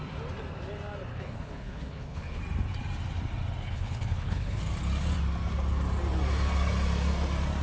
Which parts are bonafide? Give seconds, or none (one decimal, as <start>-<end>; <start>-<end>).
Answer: 0.0-1.1; 2.4-3.6; 4.6-7.6